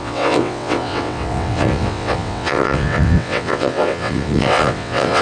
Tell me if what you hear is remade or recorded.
remade